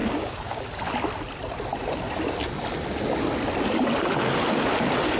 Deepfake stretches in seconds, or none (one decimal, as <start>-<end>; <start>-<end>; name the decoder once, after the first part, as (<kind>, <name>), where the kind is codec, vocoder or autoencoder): 0.0-0.6 (codec, DAC)